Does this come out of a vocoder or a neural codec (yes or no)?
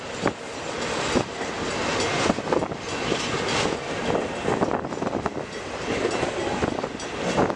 no